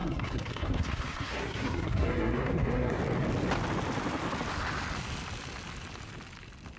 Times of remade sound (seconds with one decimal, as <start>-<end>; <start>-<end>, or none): 0.0-3.0